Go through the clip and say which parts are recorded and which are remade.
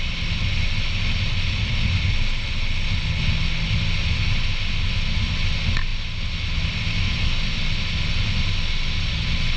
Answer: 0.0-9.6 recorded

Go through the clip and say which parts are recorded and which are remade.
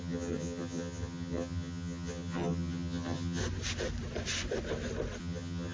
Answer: 0.0-3.4 remade; 3.4-5.2 recorded; 5.2-5.7 remade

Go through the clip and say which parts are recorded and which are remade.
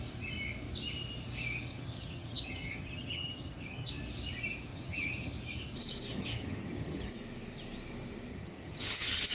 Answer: 0.0-1.7 recorded; 1.7-3.9 remade; 3.9-4.7 recorded; 4.7-5.3 remade; 5.3-6.1 recorded; 6.1-7.1 remade; 7.1-8.3 recorded; 8.3-9.3 remade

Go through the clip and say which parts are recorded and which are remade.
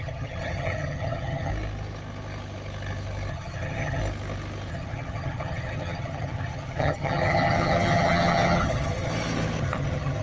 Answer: 0.0-1.5 remade; 1.5-3.3 recorded; 3.3-4.0 remade; 4.0-4.7 recorded; 4.7-9.1 remade; 9.1-9.6 recorded; 9.6-10.2 remade